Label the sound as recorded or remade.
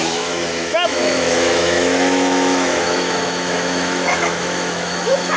remade